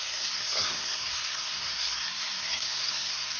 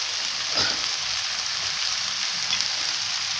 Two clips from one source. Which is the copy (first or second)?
first